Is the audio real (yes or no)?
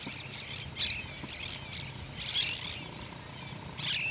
yes